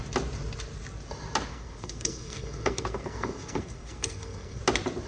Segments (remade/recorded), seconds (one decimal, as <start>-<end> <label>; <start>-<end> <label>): 0.0-1.5 recorded; 1.5-4.6 remade; 4.6-5.1 recorded